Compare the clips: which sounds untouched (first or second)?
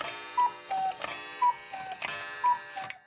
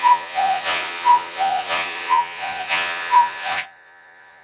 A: first